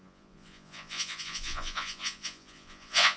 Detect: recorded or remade remade